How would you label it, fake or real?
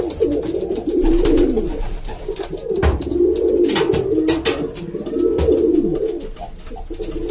real